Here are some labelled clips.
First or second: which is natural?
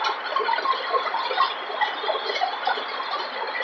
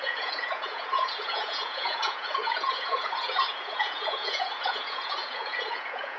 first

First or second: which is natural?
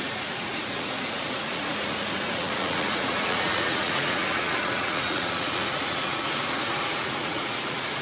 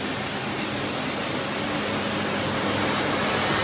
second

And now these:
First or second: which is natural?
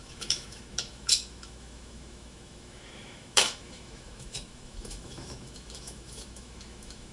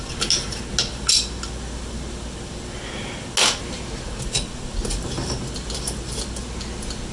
second